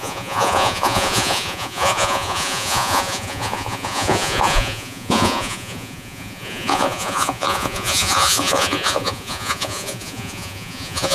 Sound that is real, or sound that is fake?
fake